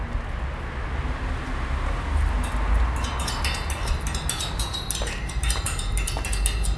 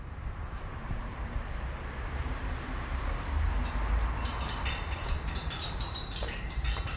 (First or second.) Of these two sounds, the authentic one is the first